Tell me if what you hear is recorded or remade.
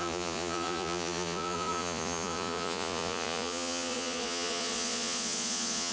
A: remade